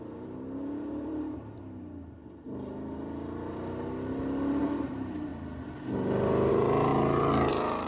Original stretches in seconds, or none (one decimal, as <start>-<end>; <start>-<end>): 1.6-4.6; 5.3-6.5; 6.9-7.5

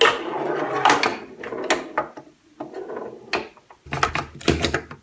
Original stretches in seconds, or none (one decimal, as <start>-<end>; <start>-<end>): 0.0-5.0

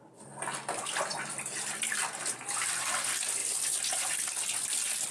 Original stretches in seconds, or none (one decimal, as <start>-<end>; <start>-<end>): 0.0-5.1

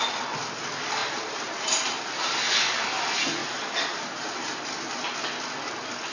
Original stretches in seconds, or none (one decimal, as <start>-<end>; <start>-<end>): 0.0-1.0; 2.2-3.4; 4.6-6.1